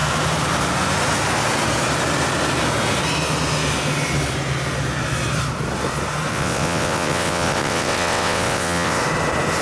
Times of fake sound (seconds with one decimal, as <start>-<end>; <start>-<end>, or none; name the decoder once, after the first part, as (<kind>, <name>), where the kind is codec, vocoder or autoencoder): 6.3-9.0 (vocoder, WaveNeXt)